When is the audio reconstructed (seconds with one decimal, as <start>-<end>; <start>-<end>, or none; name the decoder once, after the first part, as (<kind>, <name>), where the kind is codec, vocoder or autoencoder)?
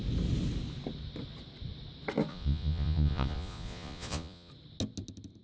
2.3-4.5 (vocoder, Vocos)